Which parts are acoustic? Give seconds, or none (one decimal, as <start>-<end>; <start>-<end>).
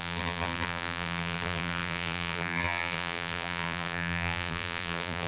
none